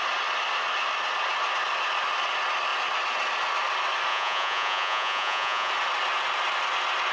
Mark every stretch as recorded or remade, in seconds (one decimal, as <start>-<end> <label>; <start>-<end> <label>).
0.0-4.1 recorded; 4.1-5.7 remade; 5.7-7.1 recorded

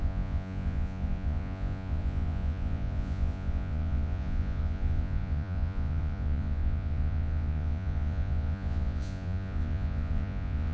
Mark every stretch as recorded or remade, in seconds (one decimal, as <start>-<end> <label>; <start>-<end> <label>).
0.0-10.7 remade